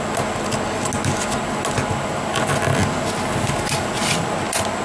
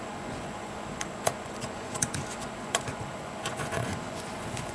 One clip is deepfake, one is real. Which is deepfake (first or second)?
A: second